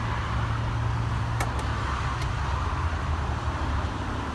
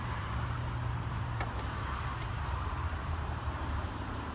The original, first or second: first